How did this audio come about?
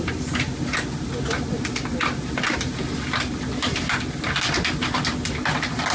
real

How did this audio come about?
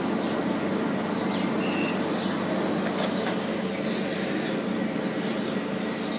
real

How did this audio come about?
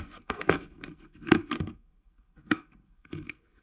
fake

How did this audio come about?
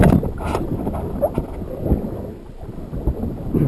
real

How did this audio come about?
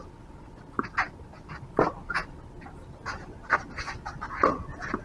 real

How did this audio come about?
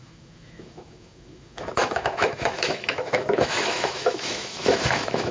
fake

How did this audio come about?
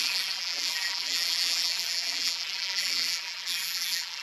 fake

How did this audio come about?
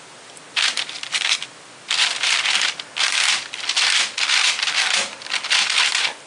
real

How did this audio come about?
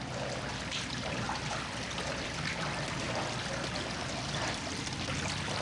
real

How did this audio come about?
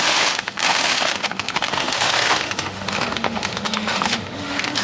fake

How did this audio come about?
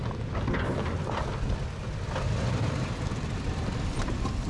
real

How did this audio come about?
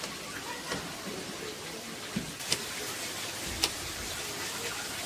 real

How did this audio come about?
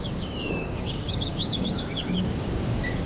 fake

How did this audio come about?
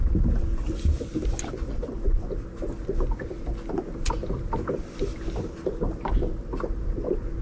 real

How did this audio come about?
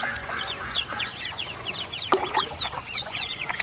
fake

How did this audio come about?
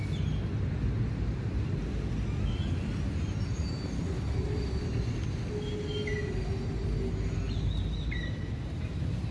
real